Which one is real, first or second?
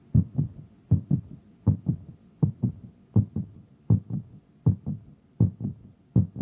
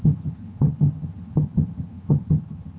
first